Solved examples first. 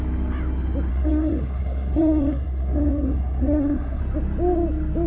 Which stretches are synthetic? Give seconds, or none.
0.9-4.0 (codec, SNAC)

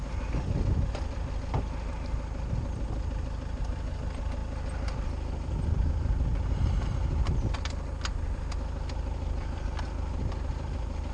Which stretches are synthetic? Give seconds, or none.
none